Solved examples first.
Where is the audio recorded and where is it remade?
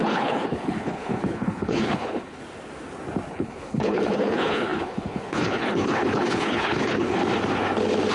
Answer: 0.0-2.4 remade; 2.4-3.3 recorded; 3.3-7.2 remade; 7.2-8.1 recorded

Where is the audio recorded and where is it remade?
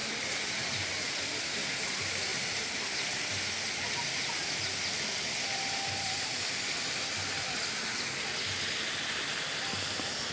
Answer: 0.0-10.3 recorded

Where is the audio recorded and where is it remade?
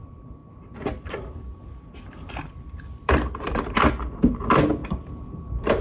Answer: 0.0-0.4 recorded; 0.4-3.9 remade; 3.9-4.8 recorded; 4.8-5.8 remade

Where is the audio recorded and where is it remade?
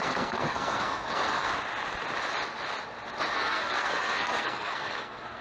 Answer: 0.0-1.5 remade; 1.5-3.3 recorded; 3.3-5.4 remade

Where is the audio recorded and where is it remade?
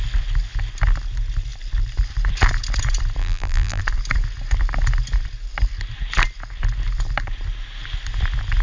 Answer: 0.0-3.2 recorded; 3.2-3.8 remade; 3.8-8.6 recorded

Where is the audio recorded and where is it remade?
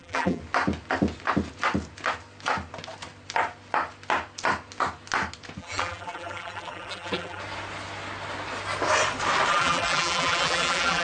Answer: 0.0-0.4 remade; 0.4-5.6 recorded; 5.6-7.4 remade; 7.4-9.5 recorded; 9.5-11.0 remade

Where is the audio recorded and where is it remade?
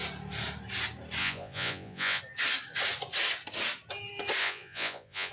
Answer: 0.0-1.2 recorded; 1.2-2.2 remade; 2.2-4.4 recorded; 4.4-5.3 remade